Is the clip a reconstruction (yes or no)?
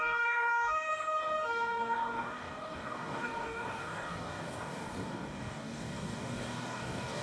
yes